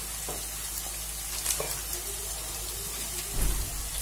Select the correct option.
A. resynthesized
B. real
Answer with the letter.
B